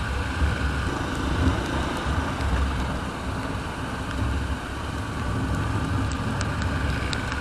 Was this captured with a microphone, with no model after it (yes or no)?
yes